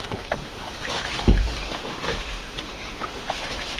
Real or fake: fake